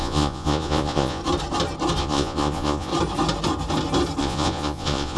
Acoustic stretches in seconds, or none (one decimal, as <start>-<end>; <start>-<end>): 1.2-2.0; 2.9-4.2